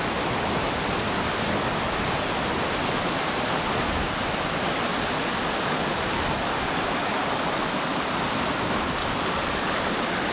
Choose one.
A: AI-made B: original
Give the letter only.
B